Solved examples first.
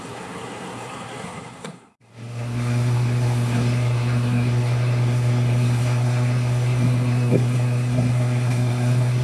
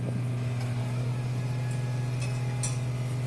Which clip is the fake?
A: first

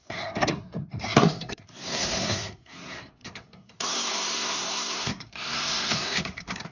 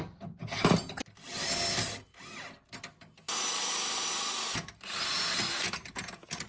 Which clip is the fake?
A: first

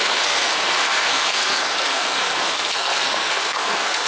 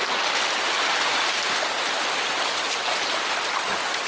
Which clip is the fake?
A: first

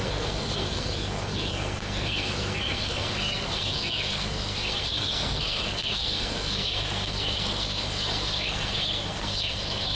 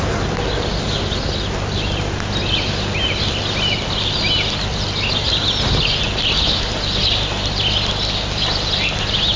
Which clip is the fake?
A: first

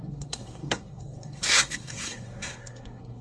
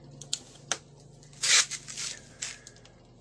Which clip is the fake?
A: first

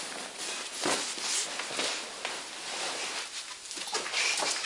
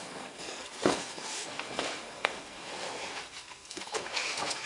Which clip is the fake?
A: second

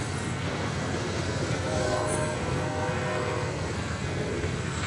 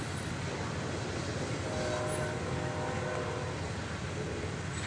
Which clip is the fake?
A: first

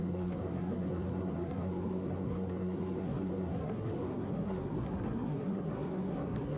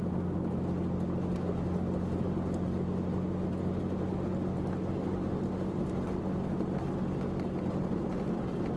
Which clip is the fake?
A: first